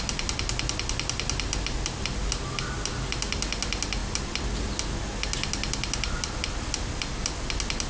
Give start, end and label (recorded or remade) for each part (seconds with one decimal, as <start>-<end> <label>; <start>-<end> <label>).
0.0-7.9 recorded